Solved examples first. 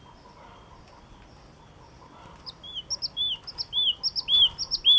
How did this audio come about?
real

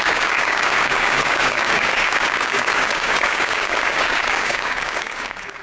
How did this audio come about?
fake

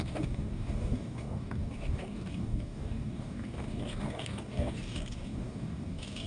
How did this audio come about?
fake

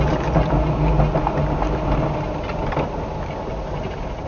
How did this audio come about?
real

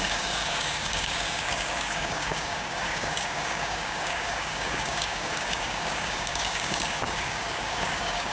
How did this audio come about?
fake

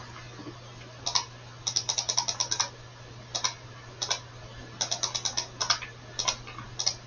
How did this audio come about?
real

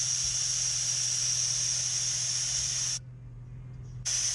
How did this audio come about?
real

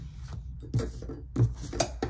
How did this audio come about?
real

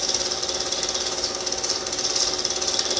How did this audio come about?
real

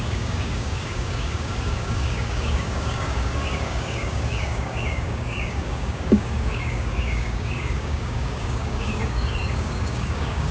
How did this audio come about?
fake